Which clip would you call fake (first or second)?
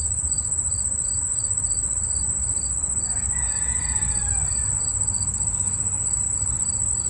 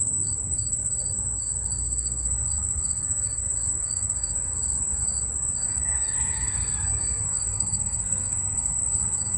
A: second